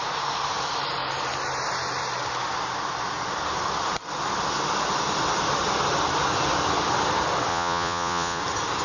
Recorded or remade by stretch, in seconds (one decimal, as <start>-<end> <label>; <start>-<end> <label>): 0.0-7.5 recorded; 7.5-8.4 remade; 8.4-8.8 recorded